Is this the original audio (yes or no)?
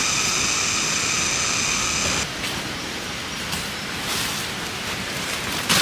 yes